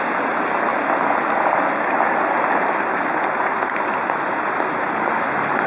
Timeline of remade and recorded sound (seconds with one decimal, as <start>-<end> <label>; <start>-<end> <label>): 0.0-5.7 recorded